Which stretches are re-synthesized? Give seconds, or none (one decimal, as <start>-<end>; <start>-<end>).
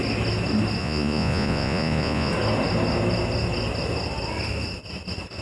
0.8-2.3